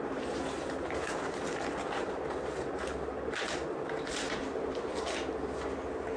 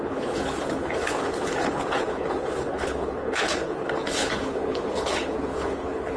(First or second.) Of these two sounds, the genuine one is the first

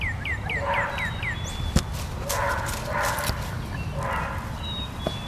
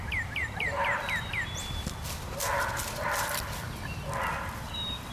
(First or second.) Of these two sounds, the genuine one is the first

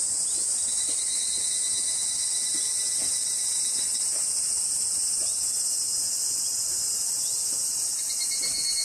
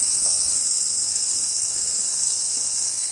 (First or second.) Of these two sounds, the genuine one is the first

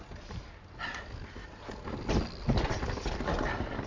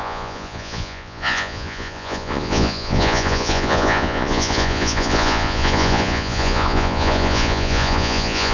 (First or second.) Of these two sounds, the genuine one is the first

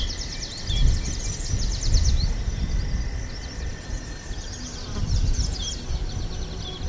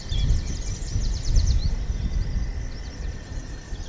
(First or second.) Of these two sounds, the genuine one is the first